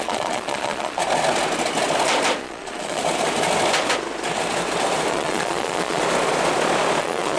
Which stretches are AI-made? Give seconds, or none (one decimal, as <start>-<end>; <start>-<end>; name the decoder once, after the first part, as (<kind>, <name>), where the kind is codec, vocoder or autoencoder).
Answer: 0.0-1.0 (vocoder, Vocos); 2.4-3.0; 5.1-6.0; 7.0-7.4